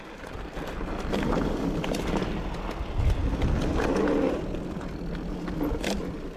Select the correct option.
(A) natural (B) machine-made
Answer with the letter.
A